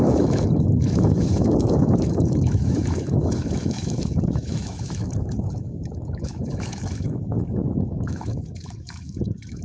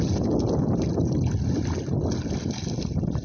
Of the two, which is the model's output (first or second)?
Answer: first